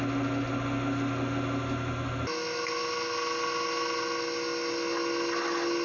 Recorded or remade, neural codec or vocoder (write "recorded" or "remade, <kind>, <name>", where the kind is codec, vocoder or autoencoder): recorded